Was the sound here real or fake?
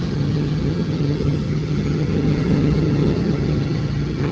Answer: fake